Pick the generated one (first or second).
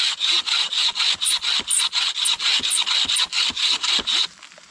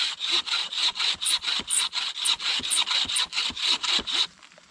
second